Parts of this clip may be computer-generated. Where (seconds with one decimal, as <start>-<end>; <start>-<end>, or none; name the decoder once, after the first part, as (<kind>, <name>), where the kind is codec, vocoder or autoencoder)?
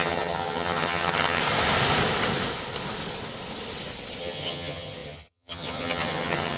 0.0-1.4 (vocoder, HiFi-GAN); 4.2-6.6